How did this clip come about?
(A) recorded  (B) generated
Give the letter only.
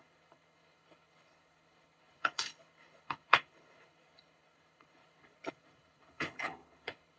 B